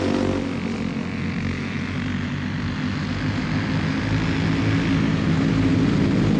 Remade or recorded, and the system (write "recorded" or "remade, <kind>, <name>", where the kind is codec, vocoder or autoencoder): recorded